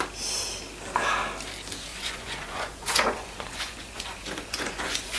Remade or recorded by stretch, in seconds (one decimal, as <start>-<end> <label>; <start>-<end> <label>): 0.0-1.9 recorded; 1.9-5.2 remade